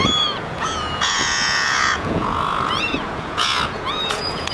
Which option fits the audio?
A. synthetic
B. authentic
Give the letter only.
A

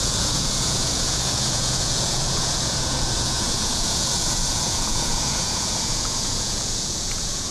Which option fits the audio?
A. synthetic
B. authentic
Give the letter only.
A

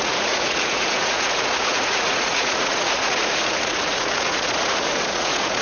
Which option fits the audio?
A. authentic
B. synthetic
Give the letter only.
B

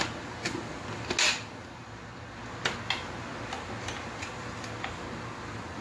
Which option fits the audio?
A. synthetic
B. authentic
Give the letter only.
B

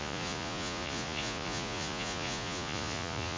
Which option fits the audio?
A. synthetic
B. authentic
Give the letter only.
A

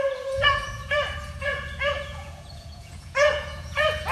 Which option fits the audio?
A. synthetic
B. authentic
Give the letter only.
A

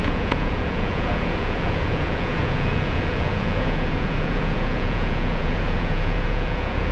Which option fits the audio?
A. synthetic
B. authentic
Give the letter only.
A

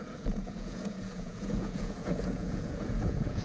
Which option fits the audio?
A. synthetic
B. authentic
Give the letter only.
A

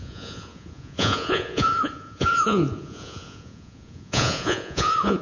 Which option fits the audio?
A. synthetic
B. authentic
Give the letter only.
A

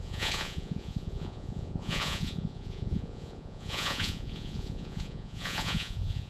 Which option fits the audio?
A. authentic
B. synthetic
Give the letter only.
B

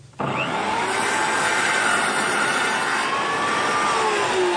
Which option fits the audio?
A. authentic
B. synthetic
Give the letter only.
A